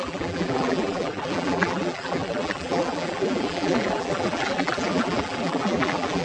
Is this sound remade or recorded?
remade